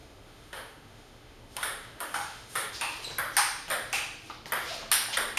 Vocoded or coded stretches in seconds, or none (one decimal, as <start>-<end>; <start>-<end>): 0.0-2.7